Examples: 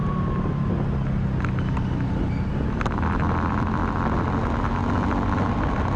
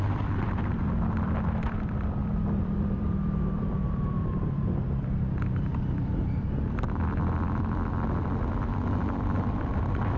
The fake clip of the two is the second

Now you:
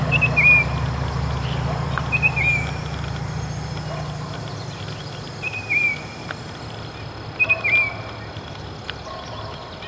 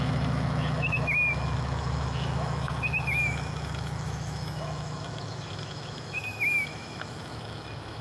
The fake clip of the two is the second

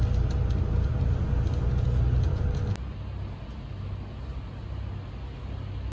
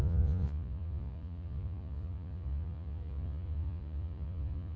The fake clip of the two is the second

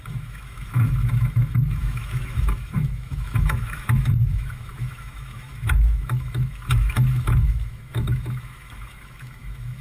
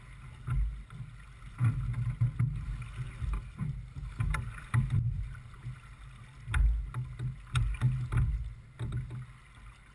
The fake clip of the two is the first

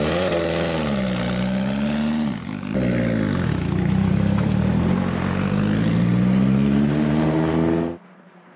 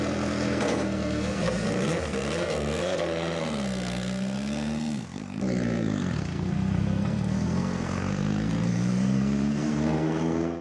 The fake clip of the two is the second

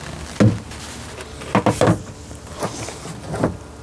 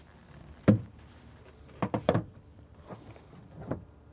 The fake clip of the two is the second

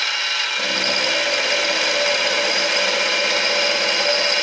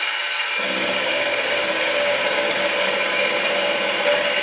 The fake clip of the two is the second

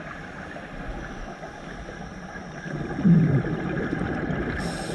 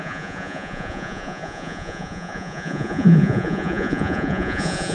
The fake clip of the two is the second